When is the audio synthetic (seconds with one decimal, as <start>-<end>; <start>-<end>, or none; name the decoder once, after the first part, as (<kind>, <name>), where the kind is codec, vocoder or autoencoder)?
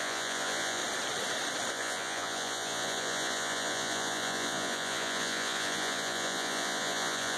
0.0-0.8 (vocoder, Vocos); 1.7-7.4